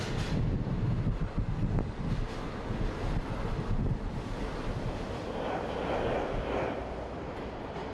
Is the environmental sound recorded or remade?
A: recorded